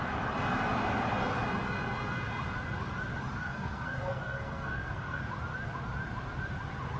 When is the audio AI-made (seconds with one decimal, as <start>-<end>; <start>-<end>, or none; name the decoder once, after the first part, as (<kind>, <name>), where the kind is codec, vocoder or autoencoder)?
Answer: 3.4-5.2 (codec, SNAC)